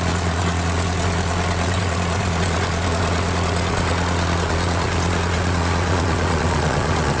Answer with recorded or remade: remade